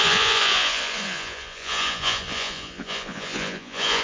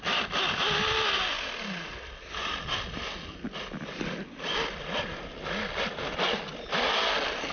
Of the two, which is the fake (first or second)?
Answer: first